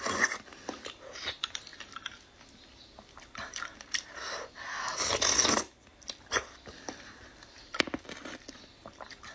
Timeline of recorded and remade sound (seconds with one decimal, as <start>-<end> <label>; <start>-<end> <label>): 0.0-5.9 recorded; 5.9-8.6 remade; 8.6-9.3 recorded